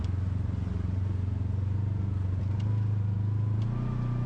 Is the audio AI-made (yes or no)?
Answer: no